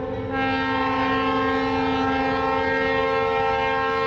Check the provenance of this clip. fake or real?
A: real